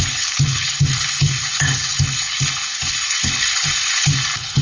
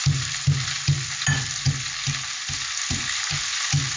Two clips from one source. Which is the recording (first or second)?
second